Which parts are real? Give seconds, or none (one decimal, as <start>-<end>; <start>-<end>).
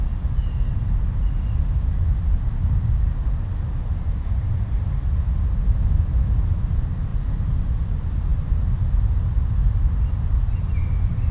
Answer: 0.0-11.3